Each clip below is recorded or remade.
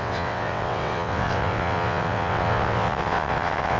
remade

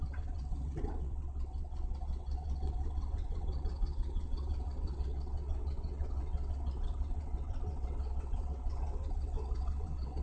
remade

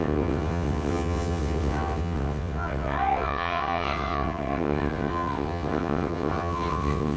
remade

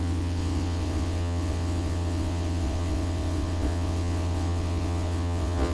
remade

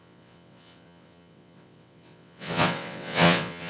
remade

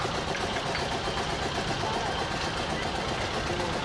recorded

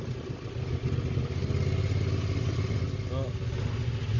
recorded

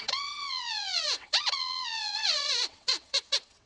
remade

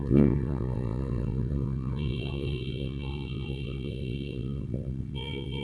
remade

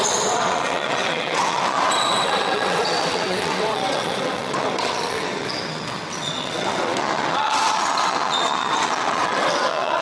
remade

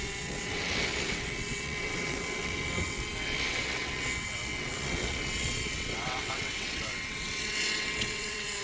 remade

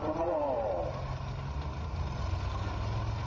recorded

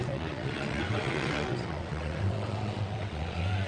remade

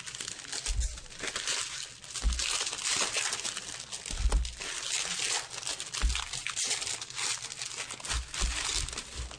recorded